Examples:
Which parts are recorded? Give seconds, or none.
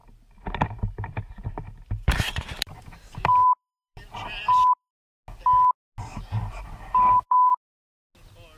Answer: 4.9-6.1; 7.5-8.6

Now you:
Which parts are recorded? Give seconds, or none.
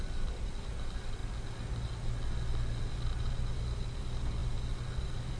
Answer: 1.2-2.8; 4.4-5.0